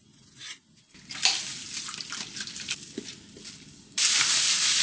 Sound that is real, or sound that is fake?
real